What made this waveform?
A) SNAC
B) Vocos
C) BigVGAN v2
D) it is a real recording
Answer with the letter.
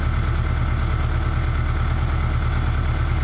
D